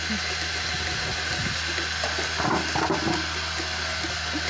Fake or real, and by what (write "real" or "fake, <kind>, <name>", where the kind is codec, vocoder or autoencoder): real